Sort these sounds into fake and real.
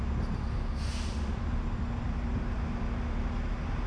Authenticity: real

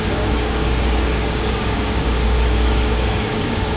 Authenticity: fake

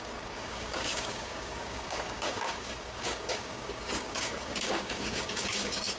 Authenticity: fake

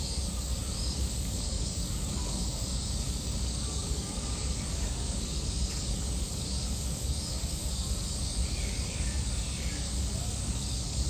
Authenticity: fake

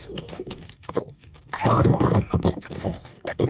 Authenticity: fake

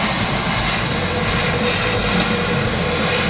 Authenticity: real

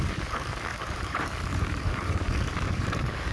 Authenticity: fake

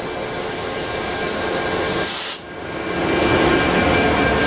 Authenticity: real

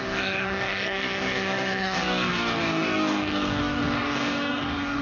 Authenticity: fake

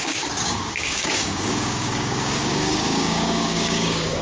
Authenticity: fake